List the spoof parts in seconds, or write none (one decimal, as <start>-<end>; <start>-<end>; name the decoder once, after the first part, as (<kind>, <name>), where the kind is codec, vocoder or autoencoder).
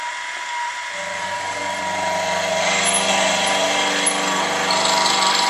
1.1-1.8 (codec, DAC)